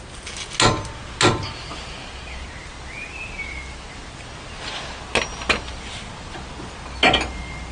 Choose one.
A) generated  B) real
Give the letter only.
B